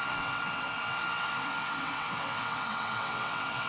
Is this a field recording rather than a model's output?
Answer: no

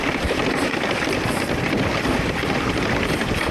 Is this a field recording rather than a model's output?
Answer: no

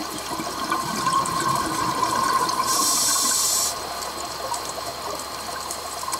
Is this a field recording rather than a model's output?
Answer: no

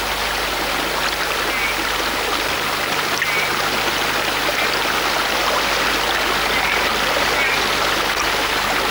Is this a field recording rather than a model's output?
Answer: yes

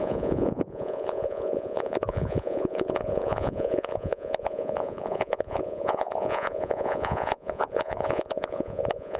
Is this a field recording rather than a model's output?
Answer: no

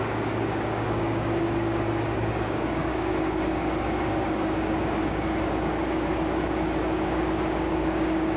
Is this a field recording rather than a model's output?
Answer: no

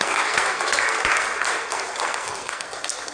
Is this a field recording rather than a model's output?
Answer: no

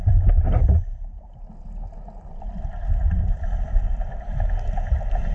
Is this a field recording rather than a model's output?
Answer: yes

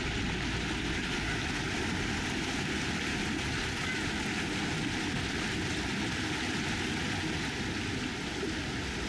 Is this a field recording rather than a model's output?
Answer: yes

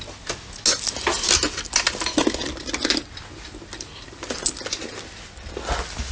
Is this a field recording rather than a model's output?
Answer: yes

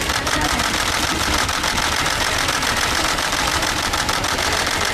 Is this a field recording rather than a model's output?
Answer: no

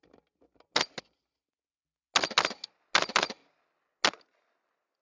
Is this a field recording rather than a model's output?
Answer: yes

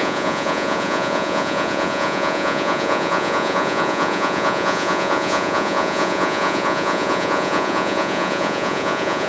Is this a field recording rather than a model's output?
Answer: no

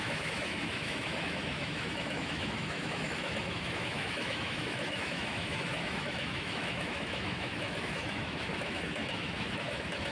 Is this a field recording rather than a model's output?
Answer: no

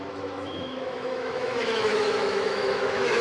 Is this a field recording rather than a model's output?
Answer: no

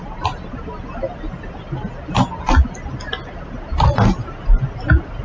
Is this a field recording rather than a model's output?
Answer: yes